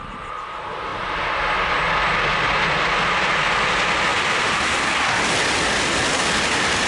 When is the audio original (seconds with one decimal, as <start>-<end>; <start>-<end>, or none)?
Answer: 0.0-4.1; 4.9-6.9